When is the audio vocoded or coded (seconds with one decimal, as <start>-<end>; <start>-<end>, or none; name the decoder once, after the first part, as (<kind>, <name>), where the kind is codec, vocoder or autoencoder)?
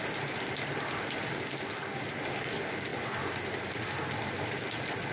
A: none